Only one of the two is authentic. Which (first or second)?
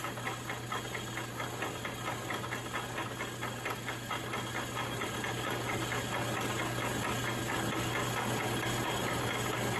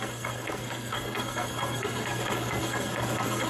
first